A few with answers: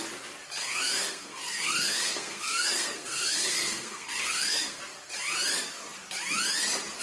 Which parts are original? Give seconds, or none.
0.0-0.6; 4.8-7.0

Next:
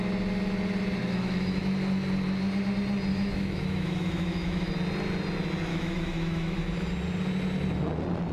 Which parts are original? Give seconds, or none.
0.0-1.0; 1.6-3.1; 4.7-5.7; 6.6-8.3

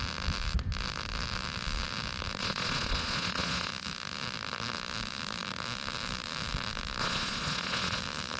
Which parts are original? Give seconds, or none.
0.0-2.4; 3.7-7.0; 8.0-8.4

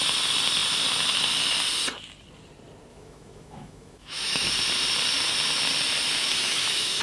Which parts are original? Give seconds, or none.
0.0-2.9; 4.5-6.2